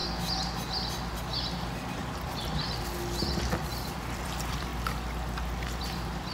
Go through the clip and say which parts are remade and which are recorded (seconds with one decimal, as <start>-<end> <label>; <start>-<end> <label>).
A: 0.0-2.0 recorded; 2.0-2.6 remade; 2.6-3.5 recorded; 3.5-4.7 remade; 4.7-5.8 recorded; 5.8-6.3 remade